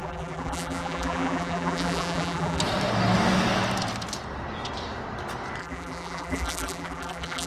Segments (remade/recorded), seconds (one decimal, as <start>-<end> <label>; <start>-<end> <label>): 0.0-2.6 remade; 2.6-5.6 recorded; 5.6-7.5 remade